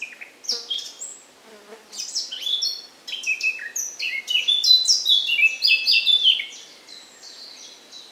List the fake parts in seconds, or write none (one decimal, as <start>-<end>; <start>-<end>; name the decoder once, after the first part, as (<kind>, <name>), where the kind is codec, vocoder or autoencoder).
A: none